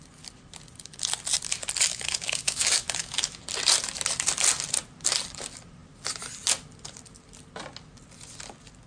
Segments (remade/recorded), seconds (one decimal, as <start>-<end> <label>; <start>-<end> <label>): 0.0-1.9 recorded; 1.9-3.4 remade; 3.4-8.9 recorded